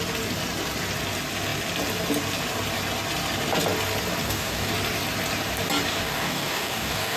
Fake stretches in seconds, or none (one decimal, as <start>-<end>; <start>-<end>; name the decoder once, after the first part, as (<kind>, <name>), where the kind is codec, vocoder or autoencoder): 4.2-4.7 (codec, DAC); 5.9-7.2